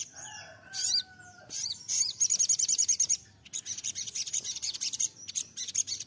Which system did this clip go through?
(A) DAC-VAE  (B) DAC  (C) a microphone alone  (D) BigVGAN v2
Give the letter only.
C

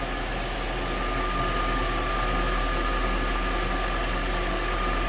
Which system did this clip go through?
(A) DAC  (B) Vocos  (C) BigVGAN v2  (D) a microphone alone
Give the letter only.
D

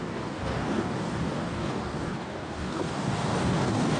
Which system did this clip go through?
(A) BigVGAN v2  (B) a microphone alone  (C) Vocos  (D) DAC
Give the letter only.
D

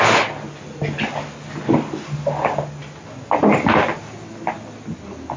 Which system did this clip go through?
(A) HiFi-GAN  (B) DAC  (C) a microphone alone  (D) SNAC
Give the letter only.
C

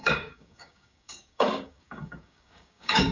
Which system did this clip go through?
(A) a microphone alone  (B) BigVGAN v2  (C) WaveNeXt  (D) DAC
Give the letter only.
D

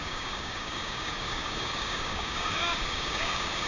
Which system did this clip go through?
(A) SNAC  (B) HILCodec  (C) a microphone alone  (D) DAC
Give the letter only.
D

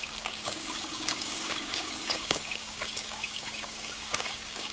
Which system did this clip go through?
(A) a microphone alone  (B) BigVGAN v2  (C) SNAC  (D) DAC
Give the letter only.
D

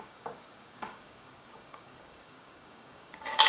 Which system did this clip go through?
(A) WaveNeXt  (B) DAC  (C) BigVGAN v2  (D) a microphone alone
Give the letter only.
B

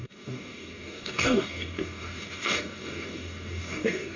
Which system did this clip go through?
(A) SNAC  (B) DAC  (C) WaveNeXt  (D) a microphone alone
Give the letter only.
B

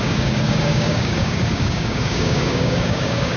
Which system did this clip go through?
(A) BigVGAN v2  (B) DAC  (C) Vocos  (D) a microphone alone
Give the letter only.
B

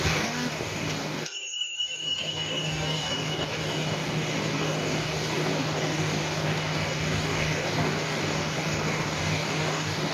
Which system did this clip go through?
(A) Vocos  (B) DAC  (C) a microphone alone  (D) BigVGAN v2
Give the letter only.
B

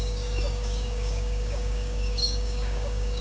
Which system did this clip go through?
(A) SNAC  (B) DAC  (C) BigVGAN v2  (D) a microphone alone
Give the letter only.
B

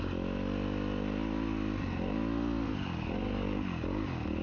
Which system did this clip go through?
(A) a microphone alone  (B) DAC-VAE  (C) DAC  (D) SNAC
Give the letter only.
A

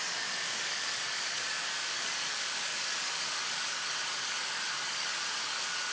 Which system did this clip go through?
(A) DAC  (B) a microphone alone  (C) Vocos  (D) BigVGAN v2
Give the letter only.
A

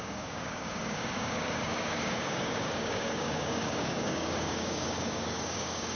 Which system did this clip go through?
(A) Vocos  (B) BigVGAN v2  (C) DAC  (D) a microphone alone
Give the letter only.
C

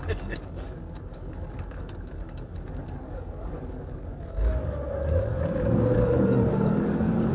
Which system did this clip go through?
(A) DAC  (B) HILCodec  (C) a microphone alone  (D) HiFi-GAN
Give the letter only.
A